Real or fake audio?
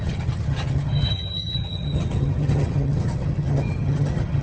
fake